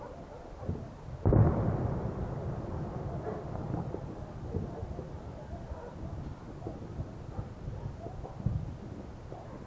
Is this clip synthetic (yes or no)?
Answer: no